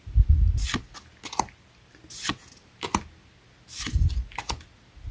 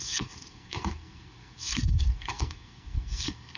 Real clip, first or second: first